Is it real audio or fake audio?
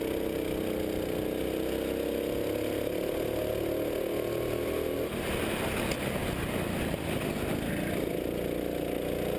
real